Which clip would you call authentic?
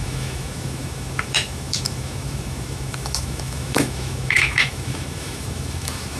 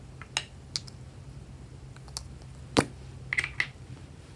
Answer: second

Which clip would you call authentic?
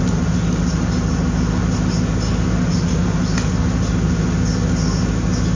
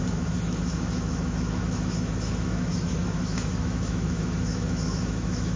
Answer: first